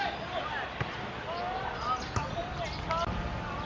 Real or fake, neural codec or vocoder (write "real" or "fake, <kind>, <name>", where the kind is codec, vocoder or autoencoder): real